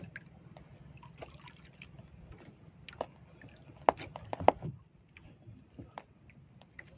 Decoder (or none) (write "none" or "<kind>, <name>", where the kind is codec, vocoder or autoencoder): none